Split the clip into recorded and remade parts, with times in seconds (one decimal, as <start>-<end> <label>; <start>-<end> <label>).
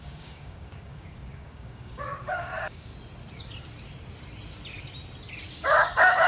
0.0-2.9 remade; 2.9-5.5 recorded; 5.5-6.3 remade